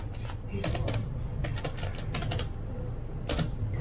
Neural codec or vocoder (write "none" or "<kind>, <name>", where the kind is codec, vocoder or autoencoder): none